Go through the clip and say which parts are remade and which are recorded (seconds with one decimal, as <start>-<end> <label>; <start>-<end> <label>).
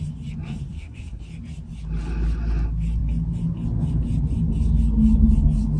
0.0-0.7 recorded; 0.7-1.2 remade; 1.2-5.8 recorded